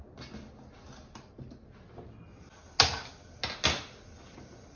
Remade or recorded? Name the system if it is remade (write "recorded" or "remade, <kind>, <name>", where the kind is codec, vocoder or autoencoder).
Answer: recorded